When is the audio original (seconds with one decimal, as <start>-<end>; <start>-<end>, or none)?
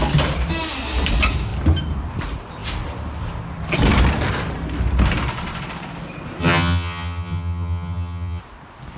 0.0-6.4; 8.4-9.0